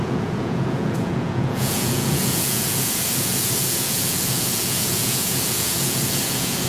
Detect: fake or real fake